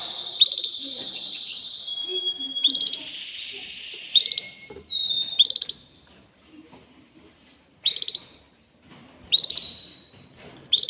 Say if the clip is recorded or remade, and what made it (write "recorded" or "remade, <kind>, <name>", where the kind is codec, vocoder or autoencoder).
remade, vocoder, BigVGAN v2